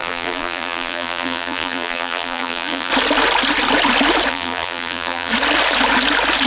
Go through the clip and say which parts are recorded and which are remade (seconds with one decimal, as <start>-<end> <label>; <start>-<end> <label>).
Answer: 0.0-2.9 remade; 2.9-4.3 recorded; 4.3-5.3 remade; 5.3-6.5 recorded